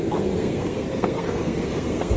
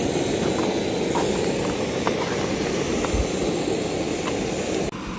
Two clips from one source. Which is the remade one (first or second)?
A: first